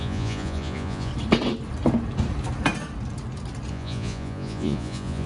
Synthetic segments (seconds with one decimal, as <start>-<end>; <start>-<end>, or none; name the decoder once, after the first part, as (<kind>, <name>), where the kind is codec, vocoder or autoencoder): 0.0-1.1 (vocoder, Vocos); 3.7-5.3